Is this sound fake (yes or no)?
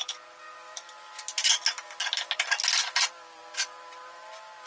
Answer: no